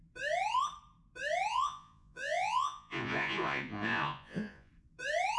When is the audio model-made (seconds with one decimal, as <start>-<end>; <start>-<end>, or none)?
1.5-4.7